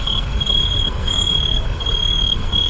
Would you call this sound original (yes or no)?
no